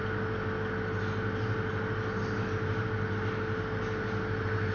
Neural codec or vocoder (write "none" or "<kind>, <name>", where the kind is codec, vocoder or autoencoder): none